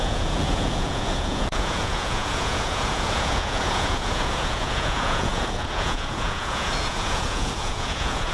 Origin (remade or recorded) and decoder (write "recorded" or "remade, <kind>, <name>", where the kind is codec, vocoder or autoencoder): remade, vocoder, Vocos